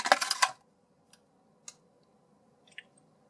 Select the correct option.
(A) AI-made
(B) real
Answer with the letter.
B